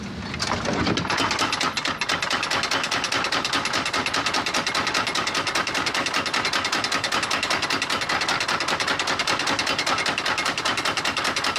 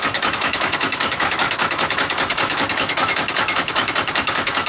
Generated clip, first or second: second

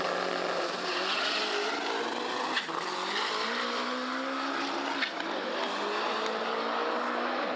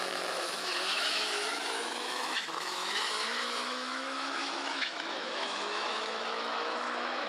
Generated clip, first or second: second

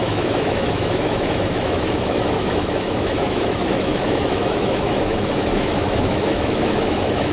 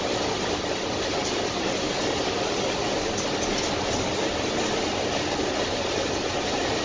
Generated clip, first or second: first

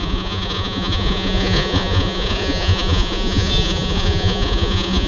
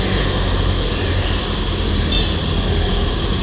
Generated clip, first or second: first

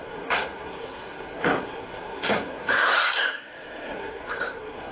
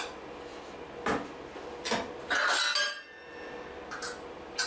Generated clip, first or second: first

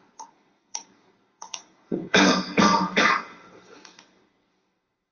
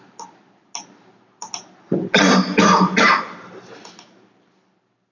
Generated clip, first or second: first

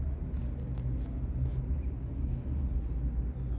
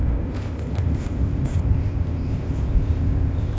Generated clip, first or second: second